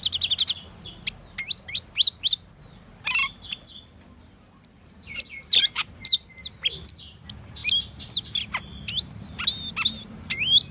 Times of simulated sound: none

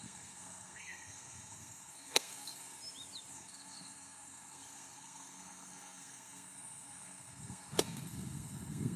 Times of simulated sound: 0.0-2.8 (codec, SNAC); 3.3-9.0

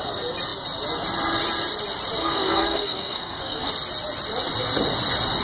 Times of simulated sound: 2.2-3.7 (codec, SNAC)

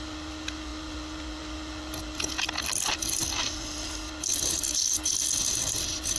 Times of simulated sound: none

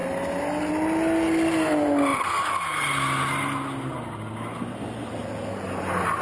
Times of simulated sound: none